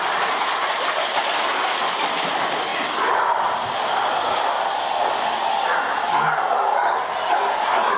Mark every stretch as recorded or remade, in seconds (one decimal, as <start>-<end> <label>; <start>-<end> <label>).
0.0-8.0 recorded